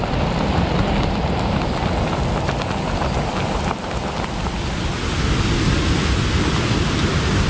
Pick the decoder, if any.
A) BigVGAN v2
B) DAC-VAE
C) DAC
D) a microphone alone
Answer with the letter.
D